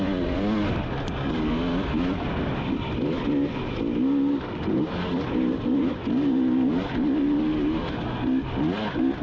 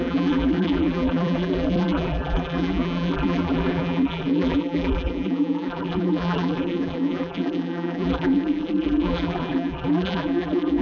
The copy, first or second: second